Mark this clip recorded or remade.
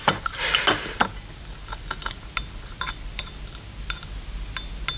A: recorded